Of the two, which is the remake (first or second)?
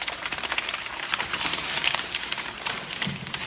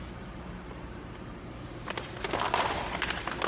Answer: first